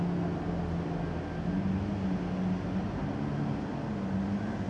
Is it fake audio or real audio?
real